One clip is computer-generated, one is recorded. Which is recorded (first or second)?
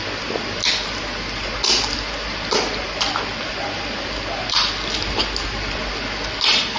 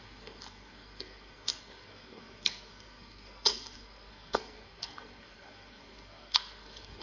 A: first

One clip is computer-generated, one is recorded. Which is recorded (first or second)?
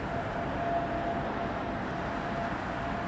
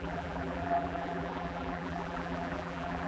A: first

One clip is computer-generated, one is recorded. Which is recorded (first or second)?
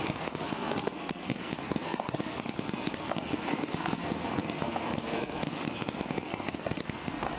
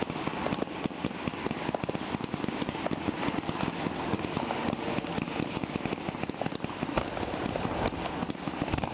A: second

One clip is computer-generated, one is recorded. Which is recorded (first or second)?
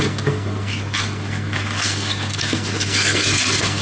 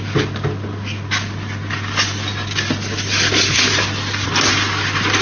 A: second